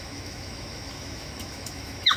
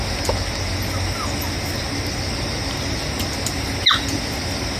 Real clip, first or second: second